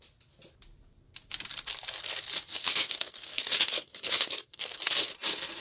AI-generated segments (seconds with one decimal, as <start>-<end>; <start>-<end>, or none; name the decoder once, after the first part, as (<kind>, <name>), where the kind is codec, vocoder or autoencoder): 2.5-5.1 (codec, SNAC)